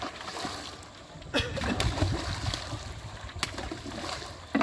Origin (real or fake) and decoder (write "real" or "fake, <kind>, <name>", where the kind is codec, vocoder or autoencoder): real